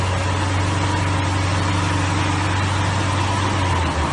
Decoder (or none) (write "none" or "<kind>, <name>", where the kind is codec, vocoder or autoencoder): none